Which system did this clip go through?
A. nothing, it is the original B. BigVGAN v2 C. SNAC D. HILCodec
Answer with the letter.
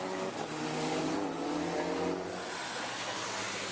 A